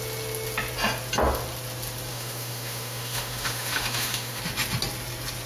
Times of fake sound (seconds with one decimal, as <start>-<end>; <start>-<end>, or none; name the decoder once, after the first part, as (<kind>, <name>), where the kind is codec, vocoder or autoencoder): 2.1-4.4 (autoencoder, DAC-VAE)